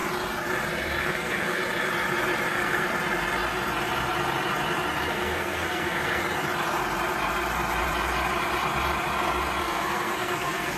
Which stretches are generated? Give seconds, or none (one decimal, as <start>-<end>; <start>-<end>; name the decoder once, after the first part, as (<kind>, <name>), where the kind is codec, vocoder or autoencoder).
1.0-1.6 (codec, SNAC); 2.5-2.9; 5.1-6.2; 9.6-10.8